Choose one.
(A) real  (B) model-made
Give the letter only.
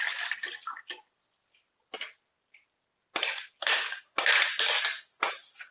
A